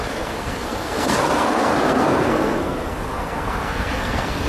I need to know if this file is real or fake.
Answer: fake